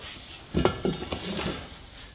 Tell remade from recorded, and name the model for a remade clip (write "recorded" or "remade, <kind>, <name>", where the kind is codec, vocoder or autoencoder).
recorded